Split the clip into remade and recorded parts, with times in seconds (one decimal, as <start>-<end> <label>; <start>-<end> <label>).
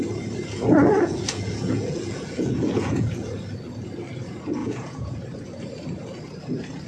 0.0-0.9 recorded; 0.9-3.3 remade; 3.3-4.6 recorded; 4.6-5.2 remade; 5.2-6.9 recorded